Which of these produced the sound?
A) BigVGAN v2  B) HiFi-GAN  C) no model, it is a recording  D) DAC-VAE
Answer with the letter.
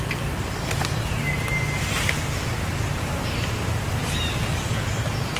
C